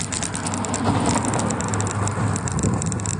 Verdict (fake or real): real